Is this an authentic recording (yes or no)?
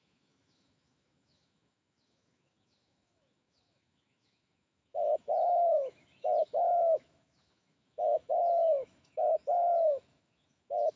no